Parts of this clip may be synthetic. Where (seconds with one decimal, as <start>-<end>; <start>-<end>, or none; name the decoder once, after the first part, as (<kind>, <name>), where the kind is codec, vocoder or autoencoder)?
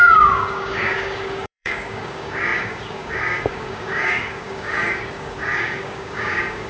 0.0-6.7 (codec, DAC)